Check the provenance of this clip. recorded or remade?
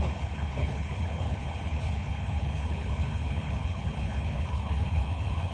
remade